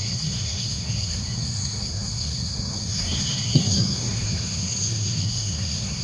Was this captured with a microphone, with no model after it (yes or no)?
no